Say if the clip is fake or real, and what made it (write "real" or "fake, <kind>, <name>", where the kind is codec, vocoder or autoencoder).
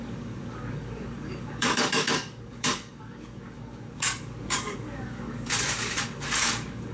fake, codec, DAC